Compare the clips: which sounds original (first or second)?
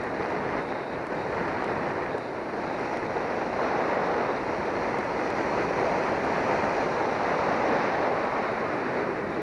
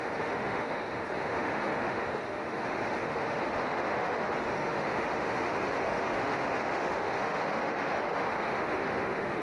first